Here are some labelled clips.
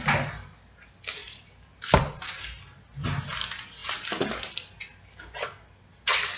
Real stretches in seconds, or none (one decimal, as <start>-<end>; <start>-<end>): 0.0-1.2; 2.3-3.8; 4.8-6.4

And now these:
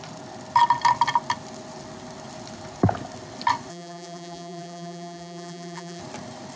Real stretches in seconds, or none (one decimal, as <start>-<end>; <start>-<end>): 0.0-3.7; 6.0-6.6

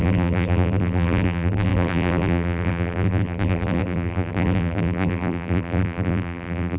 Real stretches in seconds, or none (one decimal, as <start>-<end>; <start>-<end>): none

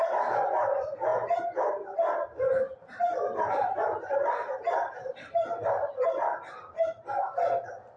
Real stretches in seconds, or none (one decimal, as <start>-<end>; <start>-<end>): 0.0-2.8; 5.9-8.0

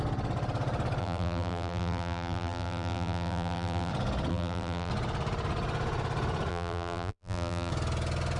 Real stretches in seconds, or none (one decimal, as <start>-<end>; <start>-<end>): 0.0-1.0; 3.9-4.3; 4.9-6.5; 7.7-8.4